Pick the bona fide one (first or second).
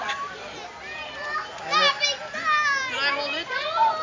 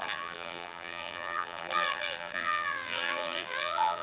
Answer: first